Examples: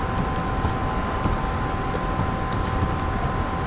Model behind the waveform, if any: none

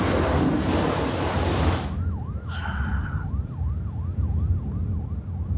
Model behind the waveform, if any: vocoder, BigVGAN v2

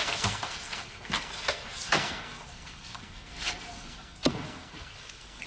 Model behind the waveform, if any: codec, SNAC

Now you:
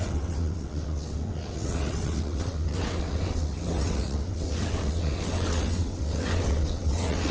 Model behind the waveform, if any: vocoder, WaveNeXt